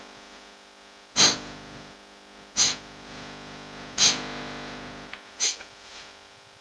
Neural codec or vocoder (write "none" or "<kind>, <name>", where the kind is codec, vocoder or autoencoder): none